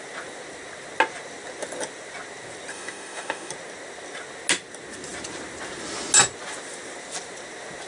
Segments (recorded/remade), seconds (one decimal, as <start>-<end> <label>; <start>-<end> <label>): 0.0-2.7 recorded; 2.7-3.5 remade; 3.5-7.9 recorded